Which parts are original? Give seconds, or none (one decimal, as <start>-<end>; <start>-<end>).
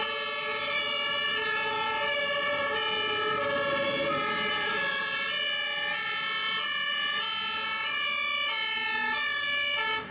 0.0-10.1